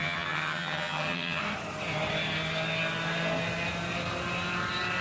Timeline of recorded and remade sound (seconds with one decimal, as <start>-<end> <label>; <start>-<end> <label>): 0.0-1.4 remade; 1.4-5.0 recorded